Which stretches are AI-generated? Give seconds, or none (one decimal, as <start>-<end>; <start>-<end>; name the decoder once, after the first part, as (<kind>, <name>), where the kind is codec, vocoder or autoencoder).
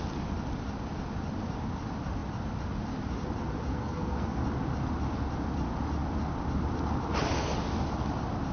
3.7-4.4 (codec, SNAC)